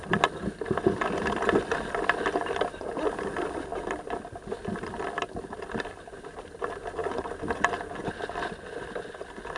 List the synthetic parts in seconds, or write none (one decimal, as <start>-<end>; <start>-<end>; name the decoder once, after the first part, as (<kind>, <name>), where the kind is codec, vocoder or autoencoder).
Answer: none